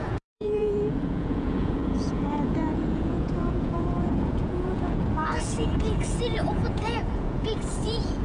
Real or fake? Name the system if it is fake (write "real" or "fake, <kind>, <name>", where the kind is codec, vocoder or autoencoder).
fake, vocoder, Vocos